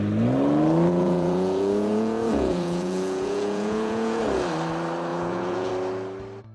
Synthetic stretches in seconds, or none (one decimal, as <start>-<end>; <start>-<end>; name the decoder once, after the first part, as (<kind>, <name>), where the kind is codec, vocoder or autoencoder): 0.9-4.2 (vocoder, Vocos); 5.1-5.7